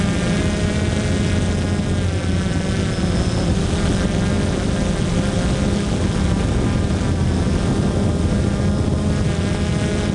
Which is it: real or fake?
real